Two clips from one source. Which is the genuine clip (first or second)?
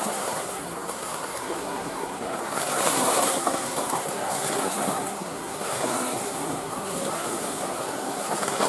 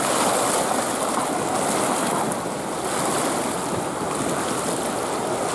second